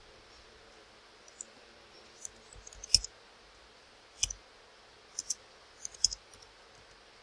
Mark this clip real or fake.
real